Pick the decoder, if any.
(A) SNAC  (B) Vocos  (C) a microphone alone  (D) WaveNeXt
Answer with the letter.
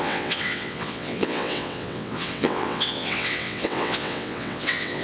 D